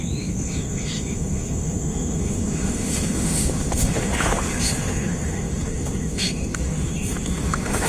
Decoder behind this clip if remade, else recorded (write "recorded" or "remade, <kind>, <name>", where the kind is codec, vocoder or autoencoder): remade, autoencoder, DAC-VAE